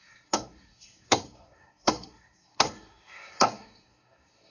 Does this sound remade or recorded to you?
remade